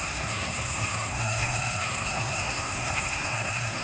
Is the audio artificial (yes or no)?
yes